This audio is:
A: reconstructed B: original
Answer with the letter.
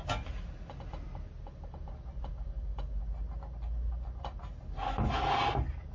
B